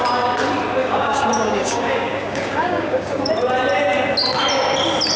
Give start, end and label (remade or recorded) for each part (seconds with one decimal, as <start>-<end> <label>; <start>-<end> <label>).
0.0-0.8 recorded; 0.8-3.3 remade; 3.3-5.2 recorded